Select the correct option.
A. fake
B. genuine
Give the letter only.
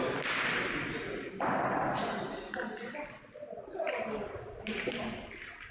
B